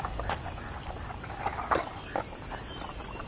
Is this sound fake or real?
real